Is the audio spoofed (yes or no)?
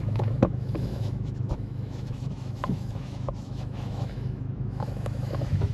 yes